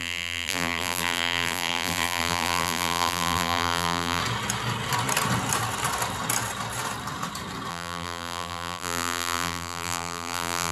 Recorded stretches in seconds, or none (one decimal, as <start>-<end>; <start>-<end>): 4.2-7.7